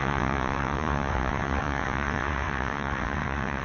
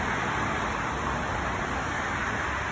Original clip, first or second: second